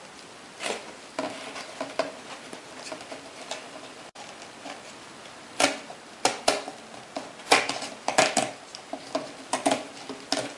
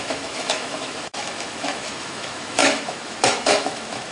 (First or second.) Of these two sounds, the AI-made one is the second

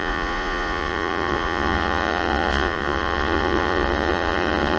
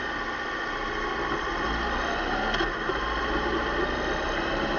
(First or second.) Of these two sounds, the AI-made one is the first